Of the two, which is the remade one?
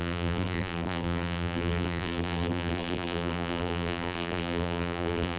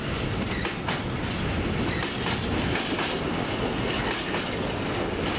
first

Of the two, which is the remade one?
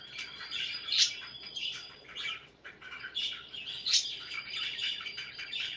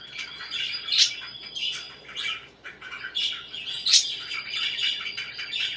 first